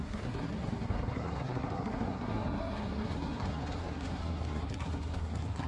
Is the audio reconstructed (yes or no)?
yes